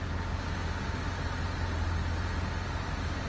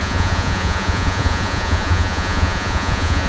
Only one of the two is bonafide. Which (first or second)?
first